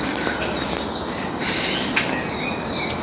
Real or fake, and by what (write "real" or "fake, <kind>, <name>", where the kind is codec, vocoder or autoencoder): real